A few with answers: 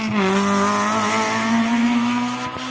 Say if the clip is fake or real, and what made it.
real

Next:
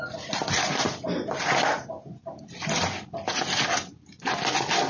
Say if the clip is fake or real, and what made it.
real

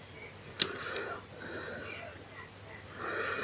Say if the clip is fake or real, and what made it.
real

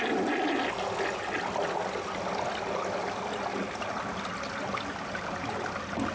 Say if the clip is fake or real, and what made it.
real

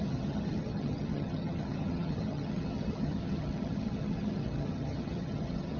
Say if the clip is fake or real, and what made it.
fake, vocoder, HiFi-GAN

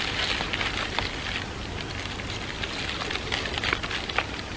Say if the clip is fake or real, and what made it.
real